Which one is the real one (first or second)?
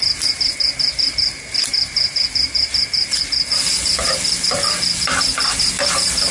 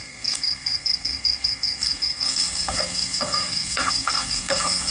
first